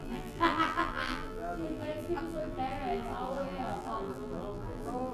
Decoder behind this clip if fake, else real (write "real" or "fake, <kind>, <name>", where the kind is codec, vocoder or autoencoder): fake, vocoder, BigVGAN v2